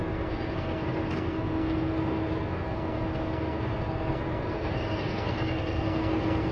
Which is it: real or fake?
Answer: fake